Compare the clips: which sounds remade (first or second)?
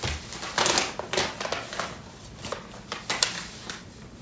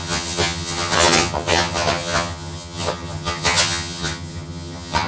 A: second